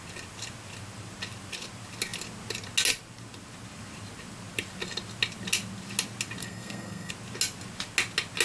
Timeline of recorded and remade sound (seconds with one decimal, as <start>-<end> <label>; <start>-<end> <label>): 0.0-6.4 recorded; 6.4-7.1 remade; 7.1-8.4 recorded